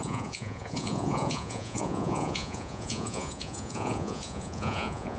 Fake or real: fake